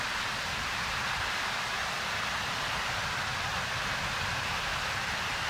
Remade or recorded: recorded